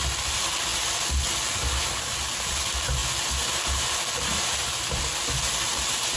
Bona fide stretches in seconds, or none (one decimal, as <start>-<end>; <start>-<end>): 0.0-6.2